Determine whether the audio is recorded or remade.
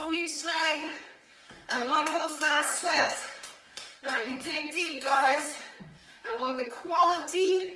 remade